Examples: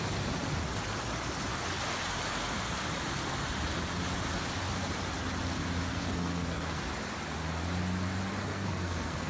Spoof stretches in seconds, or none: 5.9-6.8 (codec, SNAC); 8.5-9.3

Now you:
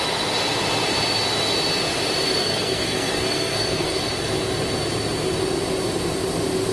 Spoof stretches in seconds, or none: 2.4-4.0 (codec, SNAC)

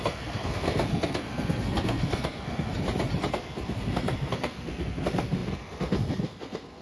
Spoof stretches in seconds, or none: 0.0-2.7 (codec, SNAC); 3.3-6.8

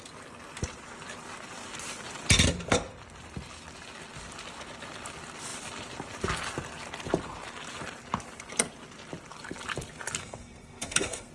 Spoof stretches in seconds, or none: 10.2-11.3 (codec, SNAC)

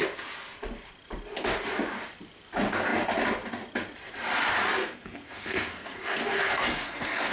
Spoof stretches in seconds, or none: 4.8-7.3 (codec, SNAC)

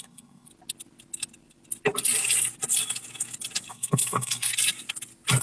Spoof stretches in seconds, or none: 0.0-0.5 (codec, SNAC); 3.7-4.5

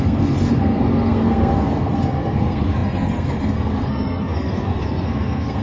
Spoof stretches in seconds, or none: 0.0-5.6 (codec, SNAC)